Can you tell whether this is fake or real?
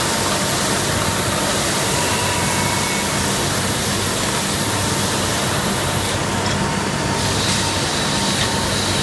real